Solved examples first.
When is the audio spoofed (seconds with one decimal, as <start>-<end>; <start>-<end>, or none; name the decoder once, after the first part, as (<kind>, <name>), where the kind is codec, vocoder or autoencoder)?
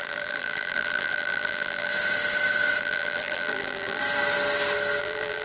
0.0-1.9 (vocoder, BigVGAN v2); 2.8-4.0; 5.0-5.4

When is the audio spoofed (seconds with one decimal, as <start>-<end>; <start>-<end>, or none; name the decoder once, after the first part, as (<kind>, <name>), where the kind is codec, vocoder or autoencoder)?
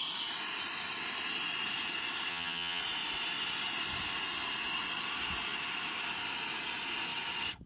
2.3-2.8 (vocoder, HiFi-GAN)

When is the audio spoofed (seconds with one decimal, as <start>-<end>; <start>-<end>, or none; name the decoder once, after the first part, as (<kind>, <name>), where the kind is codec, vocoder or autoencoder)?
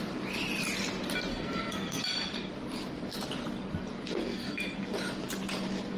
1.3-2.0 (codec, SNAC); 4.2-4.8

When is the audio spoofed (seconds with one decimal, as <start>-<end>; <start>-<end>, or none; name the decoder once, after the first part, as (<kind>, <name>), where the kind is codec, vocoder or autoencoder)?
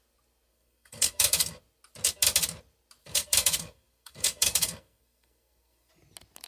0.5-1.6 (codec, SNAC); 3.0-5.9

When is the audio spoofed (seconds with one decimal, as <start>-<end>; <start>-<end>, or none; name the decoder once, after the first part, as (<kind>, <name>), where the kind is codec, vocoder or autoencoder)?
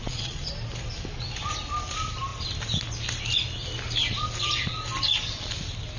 0.0-0.5 (vocoder, Vocos)